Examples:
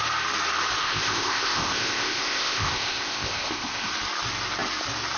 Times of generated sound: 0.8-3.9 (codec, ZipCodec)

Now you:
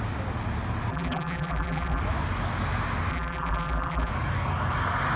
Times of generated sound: 0.9-2.0 (vocoder, BigVGAN v2); 3.1-4.1

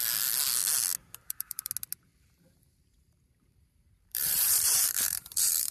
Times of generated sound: 1.0-1.7 (vocoder, BigVGAN v2); 2.1-5.7

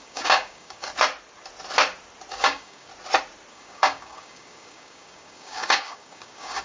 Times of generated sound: 0.0-0.9 (codec, DAC); 2.3-2.9; 3.5-6.6

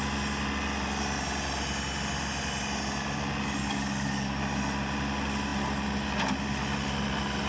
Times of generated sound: 3.6-4.4 (codec, DAC)

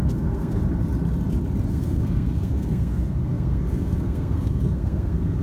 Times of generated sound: 0.0-0.6 (codec, SNAC); 1.7-5.4

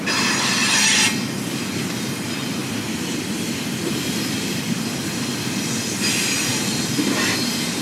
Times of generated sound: 2.6-4.8 (vocoder, BigVGAN v2)